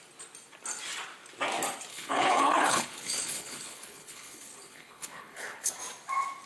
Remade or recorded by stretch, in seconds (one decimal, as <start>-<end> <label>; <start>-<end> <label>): 0.0-1.9 recorded; 1.9-5.7 remade; 5.7-6.5 recorded